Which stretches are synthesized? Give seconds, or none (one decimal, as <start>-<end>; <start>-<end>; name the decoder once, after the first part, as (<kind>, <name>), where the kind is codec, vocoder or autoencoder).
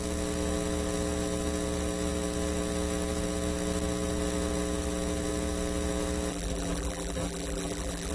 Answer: 6.3-8.1 (vocoder, BigVGAN v2)